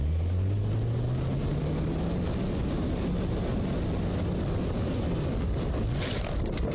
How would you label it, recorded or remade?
recorded